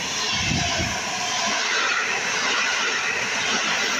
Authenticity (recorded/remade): recorded